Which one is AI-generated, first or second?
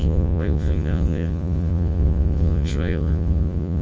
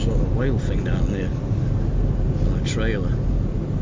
first